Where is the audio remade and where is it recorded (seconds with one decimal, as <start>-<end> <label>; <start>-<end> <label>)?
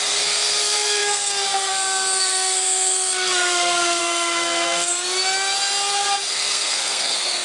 0.0-4.9 remade; 4.9-6.3 recorded; 6.3-7.4 remade